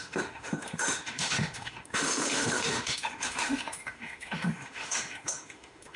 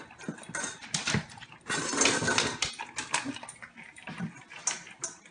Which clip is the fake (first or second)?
first